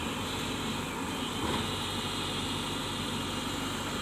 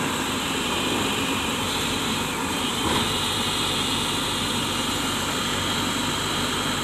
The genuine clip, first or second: first